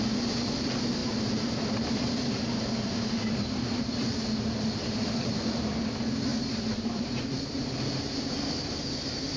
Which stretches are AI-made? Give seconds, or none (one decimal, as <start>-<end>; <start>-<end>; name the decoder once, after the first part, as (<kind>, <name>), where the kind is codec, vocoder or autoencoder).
1.0-3.3 (vocoder, BigVGAN v2); 6.3-7.7